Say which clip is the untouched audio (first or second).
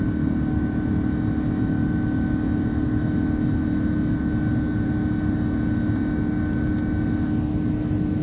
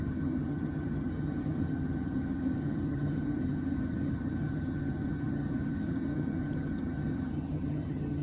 first